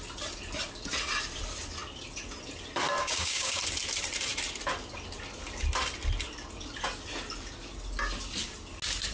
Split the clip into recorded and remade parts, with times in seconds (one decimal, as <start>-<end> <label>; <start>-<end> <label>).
0.0-3.0 recorded; 3.0-3.6 remade; 3.6-9.1 recorded